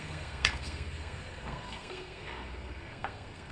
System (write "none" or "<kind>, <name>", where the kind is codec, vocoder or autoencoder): codec, SNAC